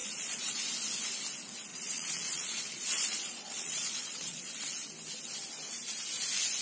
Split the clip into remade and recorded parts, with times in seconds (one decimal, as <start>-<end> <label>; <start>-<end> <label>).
0.0-0.6 remade; 0.6-1.7 recorded; 1.7-4.5 remade; 4.5-6.6 recorded